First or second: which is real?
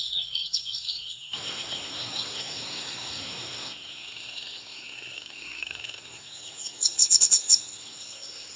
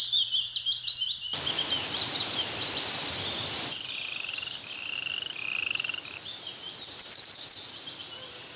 second